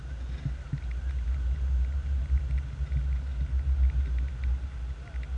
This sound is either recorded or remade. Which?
recorded